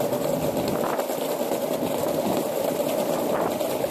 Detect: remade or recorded recorded